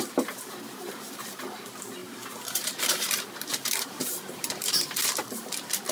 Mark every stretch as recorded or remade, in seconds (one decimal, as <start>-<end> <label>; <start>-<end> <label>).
0.0-2.0 recorded; 2.0-5.5 remade; 5.5-5.9 recorded